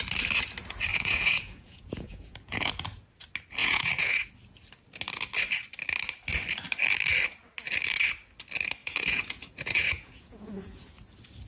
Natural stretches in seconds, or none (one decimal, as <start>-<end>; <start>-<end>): 0.0-0.9; 2.7-3.6; 4.3-8.8; 10.9-11.5